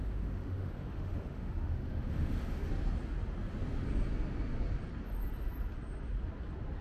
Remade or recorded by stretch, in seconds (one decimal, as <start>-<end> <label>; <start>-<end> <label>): 0.0-2.7 remade; 2.7-6.8 recorded